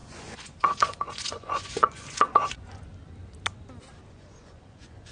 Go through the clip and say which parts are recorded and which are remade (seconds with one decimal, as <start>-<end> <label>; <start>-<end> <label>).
0.0-2.9 remade; 2.9-4.1 recorded; 4.1-5.1 remade